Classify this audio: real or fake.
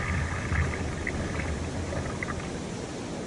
real